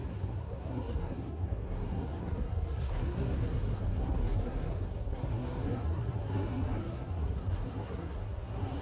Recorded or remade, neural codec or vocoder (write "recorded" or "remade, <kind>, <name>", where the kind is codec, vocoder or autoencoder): remade, codec, SNAC